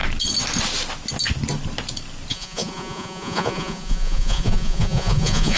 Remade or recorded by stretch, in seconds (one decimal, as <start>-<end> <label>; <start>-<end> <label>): 0.0-2.3 recorded; 2.3-5.6 remade